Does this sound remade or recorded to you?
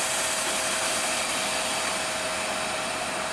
recorded